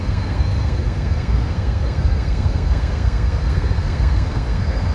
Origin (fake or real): fake